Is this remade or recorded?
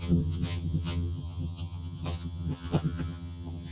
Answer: remade